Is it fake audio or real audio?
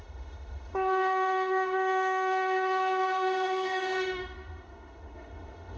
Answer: fake